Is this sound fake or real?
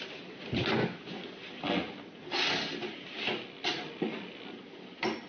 real